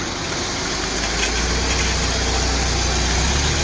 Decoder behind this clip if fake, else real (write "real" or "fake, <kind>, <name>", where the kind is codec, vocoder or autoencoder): real